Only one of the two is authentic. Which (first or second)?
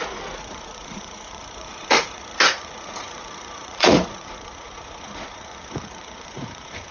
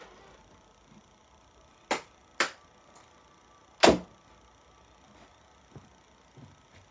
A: second